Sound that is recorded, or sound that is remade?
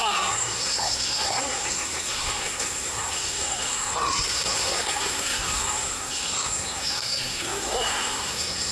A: remade